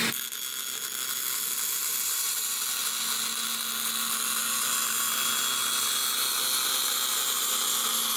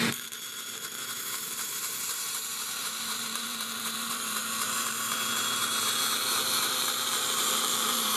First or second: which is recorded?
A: first